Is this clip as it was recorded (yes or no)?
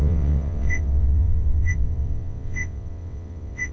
no